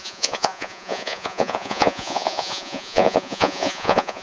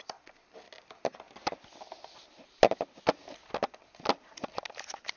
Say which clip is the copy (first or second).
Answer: first